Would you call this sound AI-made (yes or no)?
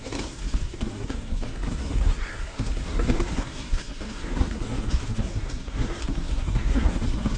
yes